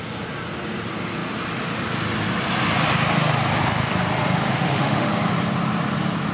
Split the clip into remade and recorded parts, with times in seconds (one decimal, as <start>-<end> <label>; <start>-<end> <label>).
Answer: 0.0-4.5 recorded; 4.5-5.1 remade; 5.1-6.3 recorded